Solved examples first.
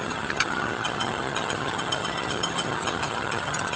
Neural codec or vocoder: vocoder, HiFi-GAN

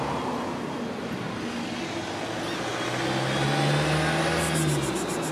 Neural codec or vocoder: none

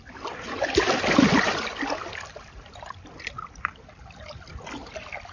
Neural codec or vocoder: vocoder, BigVGAN v2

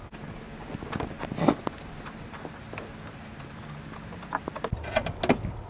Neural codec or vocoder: none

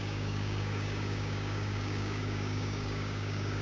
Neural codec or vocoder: codec, DAC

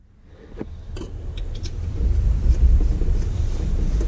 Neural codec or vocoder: none